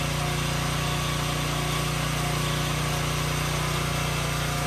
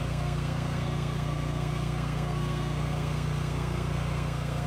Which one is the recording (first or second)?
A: first